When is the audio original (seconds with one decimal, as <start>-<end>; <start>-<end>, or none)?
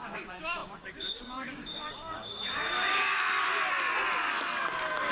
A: 3.1-4.6